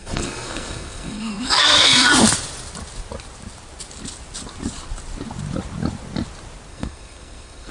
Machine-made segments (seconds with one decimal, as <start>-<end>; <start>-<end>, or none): 0.0-2.1; 6.7-7.7